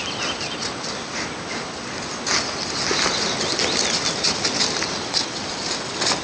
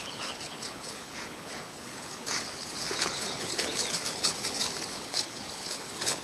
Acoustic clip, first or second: first